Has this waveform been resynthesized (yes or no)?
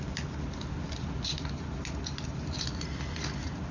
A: no